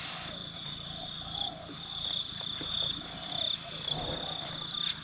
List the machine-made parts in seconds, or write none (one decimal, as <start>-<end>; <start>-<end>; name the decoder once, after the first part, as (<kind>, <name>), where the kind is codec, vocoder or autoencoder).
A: 0.4-2.7 (vocoder, BigVGAN v2)